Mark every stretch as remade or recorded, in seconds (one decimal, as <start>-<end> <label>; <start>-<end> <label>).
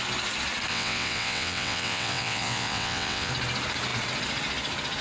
0.0-0.7 recorded; 0.7-3.3 remade; 3.3-5.0 recorded